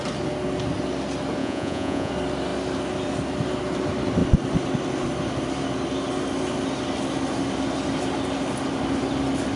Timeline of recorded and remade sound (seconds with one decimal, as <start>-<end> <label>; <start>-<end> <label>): 0.0-1.4 recorded; 1.4-2.1 remade; 2.1-9.6 recorded